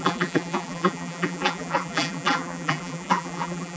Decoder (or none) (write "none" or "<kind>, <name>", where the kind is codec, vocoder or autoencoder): vocoder, BigVGAN v2